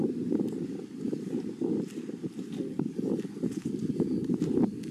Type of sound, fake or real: real